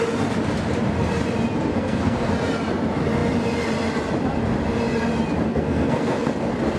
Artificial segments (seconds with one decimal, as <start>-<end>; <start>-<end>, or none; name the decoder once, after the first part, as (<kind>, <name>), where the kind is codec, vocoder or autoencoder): 1.7-2.3 (codec, SNAC); 5.5-6.3